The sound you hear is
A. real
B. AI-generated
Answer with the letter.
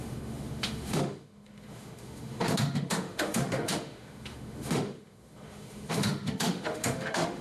B